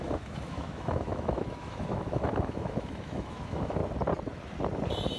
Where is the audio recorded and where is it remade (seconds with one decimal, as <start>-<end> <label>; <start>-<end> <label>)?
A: 0.0-3.8 remade; 3.8-5.2 recorded